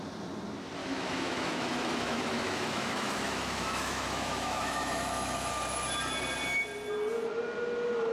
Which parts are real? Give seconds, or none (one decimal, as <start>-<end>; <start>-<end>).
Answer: 0.0-0.8; 5.5-8.1